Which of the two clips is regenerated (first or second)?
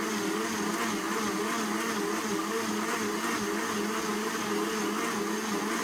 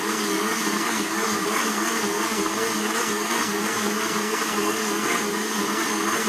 second